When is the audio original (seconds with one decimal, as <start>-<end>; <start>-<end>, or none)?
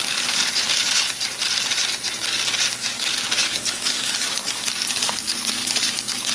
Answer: 0.4-2.7